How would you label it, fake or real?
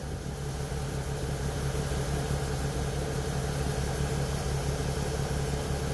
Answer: real